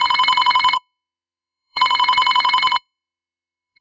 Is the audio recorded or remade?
remade